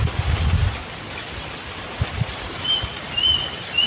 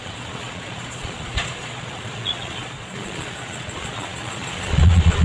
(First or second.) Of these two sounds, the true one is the first